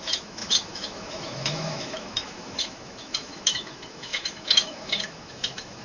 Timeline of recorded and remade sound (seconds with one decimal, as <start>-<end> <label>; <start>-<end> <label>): 0.0-5.8 remade